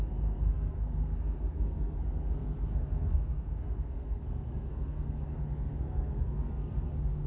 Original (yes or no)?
no